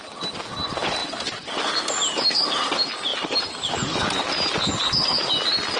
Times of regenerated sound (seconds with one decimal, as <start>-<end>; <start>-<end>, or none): none